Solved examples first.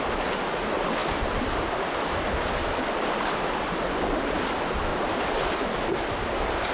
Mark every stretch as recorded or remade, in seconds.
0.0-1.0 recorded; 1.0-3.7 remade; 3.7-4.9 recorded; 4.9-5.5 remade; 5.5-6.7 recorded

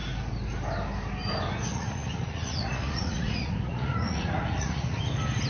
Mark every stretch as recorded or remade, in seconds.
0.0-1.7 recorded; 1.7-5.0 remade; 5.0-5.5 recorded

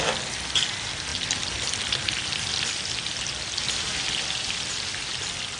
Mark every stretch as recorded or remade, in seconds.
0.0-5.6 recorded

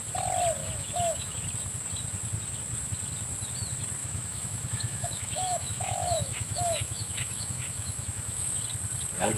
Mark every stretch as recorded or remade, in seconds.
0.0-0.6 recorded; 0.6-1.4 remade; 1.4-4.0 recorded; 4.0-8.6 remade; 8.6-9.4 recorded